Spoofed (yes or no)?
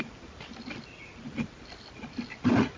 no